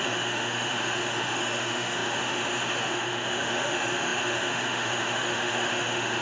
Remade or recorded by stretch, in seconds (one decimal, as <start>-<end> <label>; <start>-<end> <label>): 0.0-6.2 remade